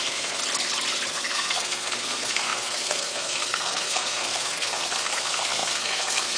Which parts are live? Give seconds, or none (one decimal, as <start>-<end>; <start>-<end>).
0.4-1.1